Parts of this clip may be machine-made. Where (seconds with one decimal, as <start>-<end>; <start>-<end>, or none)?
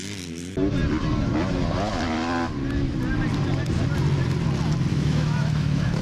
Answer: 4.9-6.0